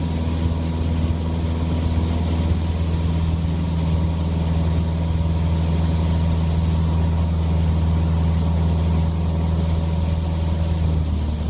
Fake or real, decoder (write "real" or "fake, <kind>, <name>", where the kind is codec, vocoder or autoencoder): real